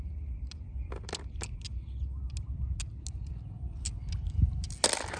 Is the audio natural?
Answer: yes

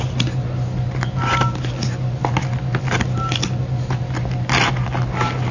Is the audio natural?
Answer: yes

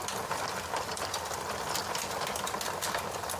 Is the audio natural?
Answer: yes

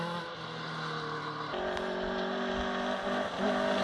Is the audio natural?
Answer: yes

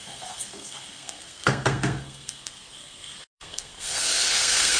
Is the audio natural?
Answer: no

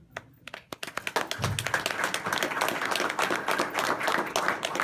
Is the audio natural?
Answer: yes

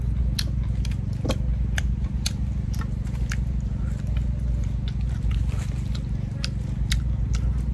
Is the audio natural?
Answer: yes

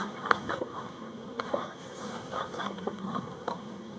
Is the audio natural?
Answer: no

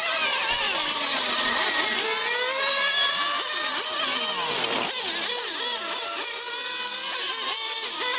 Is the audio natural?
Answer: yes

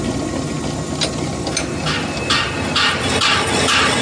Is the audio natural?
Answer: yes